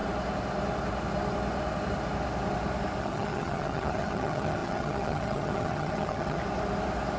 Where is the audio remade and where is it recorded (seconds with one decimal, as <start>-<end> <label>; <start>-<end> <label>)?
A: 0.0-3.0 recorded; 3.0-6.4 remade; 6.4-7.2 recorded